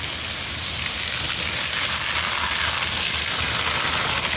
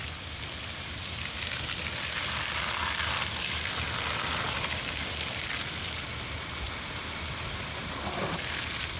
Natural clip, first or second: first